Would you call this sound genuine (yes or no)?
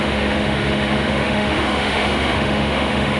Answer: no